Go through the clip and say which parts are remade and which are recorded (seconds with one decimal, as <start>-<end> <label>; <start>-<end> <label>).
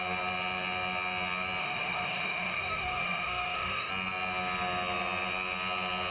0.0-1.6 recorded; 1.6-3.9 remade; 3.9-6.1 recorded